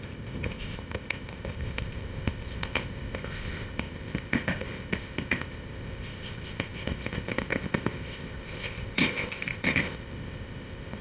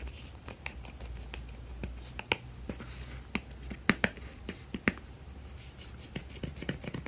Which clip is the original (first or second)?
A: second